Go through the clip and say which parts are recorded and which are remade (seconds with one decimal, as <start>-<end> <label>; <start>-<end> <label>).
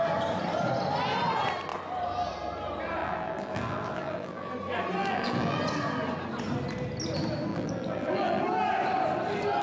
0.0-3.0 recorded; 3.0-4.5 remade; 4.5-5.0 recorded; 5.0-5.6 remade; 5.6-7.5 recorded; 7.5-8.4 remade; 8.4-9.6 recorded